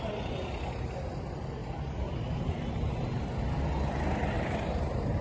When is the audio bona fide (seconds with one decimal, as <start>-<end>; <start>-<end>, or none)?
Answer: 0.0-1.6; 3.4-4.2